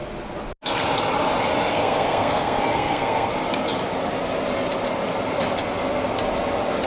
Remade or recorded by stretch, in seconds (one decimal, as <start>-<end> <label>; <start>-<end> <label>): 0.0-1.7 recorded; 1.7-3.3 remade; 3.3-6.9 recorded